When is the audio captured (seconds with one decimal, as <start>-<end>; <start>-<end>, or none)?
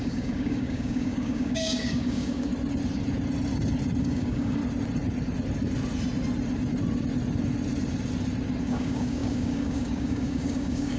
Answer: 2.5-4.0; 4.6-8.6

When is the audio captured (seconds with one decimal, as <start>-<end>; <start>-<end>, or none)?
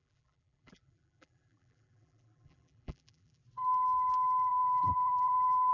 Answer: 3.4-4.5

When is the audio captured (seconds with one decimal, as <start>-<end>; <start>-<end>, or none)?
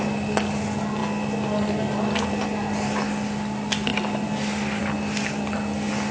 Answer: 0.0-6.1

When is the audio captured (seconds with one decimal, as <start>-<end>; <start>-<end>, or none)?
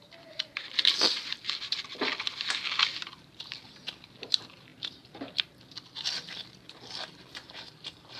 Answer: 2.1-2.7; 6.4-7.1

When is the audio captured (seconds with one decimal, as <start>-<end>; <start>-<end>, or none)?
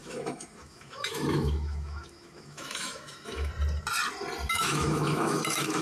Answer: 3.5-4.5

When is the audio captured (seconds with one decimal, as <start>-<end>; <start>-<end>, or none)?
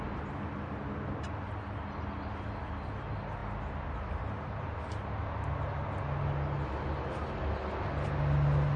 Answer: 0.0-8.8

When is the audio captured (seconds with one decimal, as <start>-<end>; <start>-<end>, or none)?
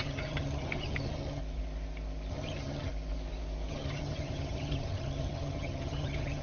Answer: 1.4-2.3; 2.9-3.7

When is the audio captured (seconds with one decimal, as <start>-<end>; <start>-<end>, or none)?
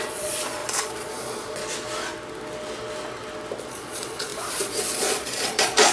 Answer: 1.6-3.7